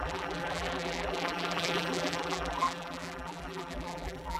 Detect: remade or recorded remade